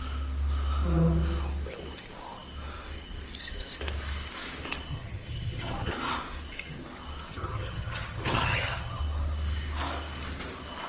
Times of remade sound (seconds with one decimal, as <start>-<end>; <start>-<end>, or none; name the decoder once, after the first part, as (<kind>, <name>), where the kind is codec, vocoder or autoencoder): 4.9-5.9 (vocoder, HiFi-GAN); 7.3-9.0